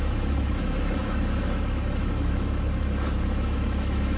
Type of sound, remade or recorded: remade